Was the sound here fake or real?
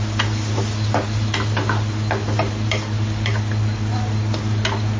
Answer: real